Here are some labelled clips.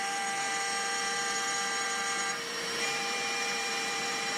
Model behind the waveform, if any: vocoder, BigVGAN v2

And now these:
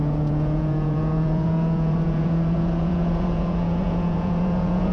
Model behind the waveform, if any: vocoder, Vocos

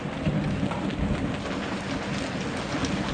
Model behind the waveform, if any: none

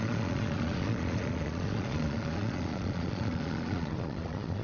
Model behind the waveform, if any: vocoder, Vocos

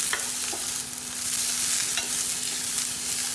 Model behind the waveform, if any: none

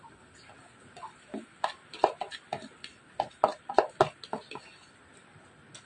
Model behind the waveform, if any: none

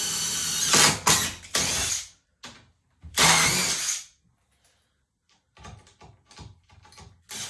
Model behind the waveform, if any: none